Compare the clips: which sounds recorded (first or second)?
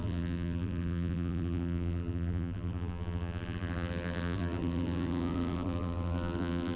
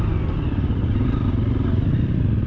second